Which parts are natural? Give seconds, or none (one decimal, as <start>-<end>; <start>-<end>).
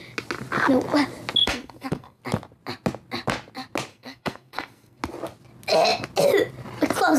0.0-1.4; 2.2-3.9; 5.0-7.2